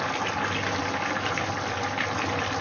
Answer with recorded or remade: recorded